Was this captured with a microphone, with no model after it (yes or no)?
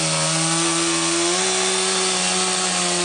yes